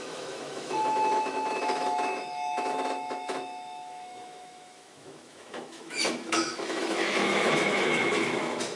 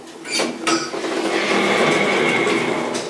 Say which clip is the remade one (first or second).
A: first